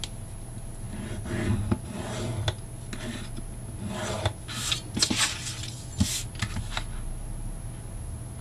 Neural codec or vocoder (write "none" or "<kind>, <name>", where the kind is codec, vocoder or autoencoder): none